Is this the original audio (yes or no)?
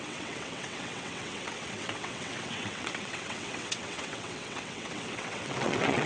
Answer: no